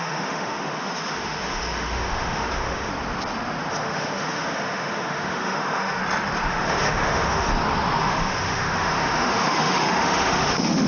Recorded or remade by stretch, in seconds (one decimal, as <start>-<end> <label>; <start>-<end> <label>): 0.0-2.9 remade; 2.9-3.7 recorded; 3.7-6.0 remade; 6.0-6.5 recorded; 6.5-7.5 remade; 7.5-8.0 recorded; 8.0-10.9 remade